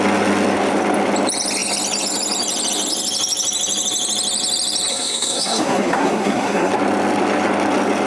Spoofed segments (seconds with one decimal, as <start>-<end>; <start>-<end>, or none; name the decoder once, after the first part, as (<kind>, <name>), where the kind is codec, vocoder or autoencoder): 4.9-6.7 (codec, SNAC)